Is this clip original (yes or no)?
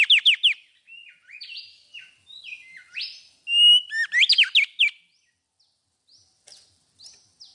yes